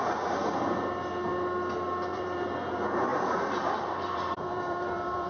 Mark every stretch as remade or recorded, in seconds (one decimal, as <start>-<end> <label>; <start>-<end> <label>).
0.0-2.1 recorded; 2.1-2.7 remade; 2.7-3.1 recorded; 3.1-5.3 remade